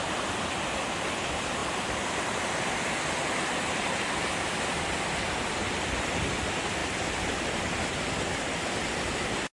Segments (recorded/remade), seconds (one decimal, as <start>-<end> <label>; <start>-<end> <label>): 0.0-9.6 recorded